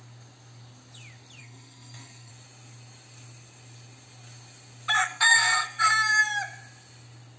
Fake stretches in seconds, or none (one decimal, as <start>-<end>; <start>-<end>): 1.4-2.3; 5.0-5.8